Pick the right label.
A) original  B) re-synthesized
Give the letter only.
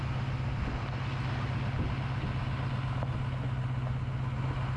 A